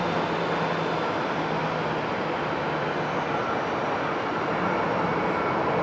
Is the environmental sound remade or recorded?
recorded